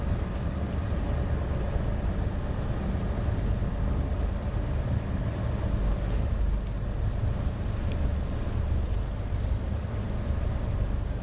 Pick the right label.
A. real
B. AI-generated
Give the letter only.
A